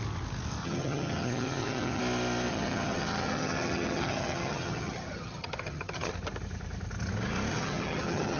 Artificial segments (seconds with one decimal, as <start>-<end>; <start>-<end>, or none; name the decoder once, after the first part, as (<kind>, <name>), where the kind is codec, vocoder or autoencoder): 0.6-2.0 (vocoder, HiFi-GAN); 2.5-6.1; 7.5-8.4